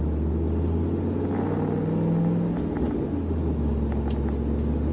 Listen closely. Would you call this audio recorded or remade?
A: recorded